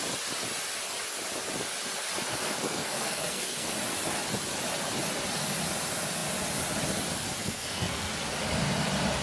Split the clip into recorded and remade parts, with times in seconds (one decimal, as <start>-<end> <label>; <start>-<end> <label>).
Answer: 0.0-2.3 recorded; 2.3-3.7 remade; 3.7-7.4 recorded; 7.4-8.1 remade; 8.1-9.2 recorded